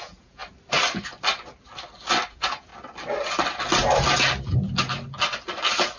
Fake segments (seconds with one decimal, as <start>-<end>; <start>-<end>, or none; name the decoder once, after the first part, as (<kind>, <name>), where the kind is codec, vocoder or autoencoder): 0.0-0.4 (vocoder, Vocos); 2.3-2.7